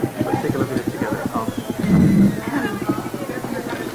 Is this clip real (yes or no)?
yes